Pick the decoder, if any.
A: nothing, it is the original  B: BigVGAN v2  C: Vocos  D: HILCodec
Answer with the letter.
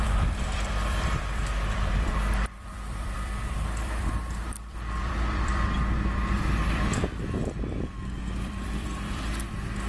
B